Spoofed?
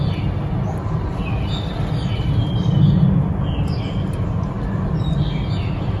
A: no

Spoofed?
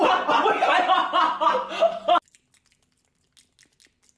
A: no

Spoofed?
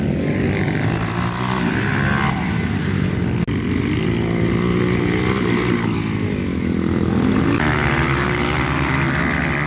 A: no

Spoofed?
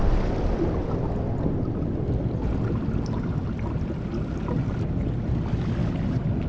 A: no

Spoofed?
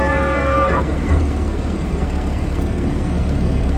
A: yes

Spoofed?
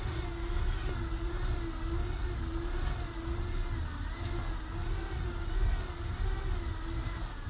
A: no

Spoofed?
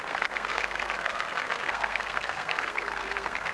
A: yes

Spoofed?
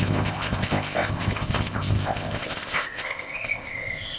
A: yes